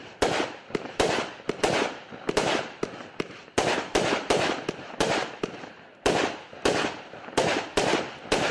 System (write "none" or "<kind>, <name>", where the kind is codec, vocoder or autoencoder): vocoder, BigVGAN v2